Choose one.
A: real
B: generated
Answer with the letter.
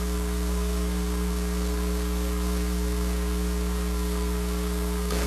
B